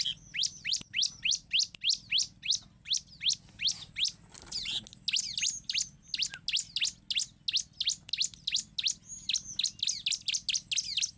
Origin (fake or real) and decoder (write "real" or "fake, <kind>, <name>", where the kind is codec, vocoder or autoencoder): real